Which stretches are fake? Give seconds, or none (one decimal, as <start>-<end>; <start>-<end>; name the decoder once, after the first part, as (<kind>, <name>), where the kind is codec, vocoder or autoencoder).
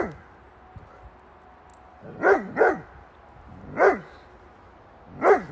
none